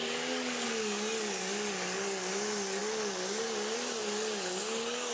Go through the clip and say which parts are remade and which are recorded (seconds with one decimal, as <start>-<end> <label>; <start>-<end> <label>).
0.0-5.1 remade